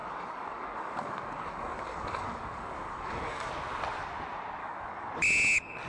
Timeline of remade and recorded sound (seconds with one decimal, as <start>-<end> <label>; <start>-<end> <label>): 0.0-3.5 remade; 3.5-4.6 recorded; 4.6-5.1 remade; 5.1-5.9 recorded